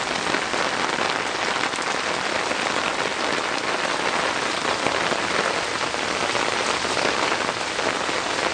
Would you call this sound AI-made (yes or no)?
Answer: no